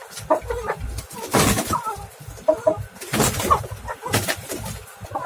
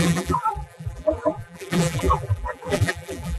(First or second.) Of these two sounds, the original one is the first